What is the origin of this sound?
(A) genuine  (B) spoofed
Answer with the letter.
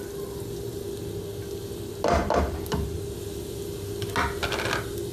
A